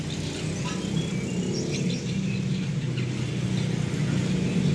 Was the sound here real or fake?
real